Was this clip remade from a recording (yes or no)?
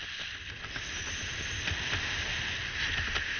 no